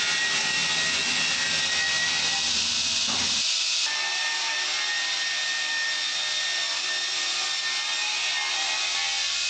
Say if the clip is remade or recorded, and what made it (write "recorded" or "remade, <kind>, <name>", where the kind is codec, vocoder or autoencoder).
recorded